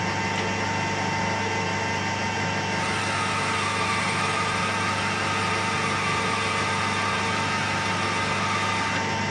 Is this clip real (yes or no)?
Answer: yes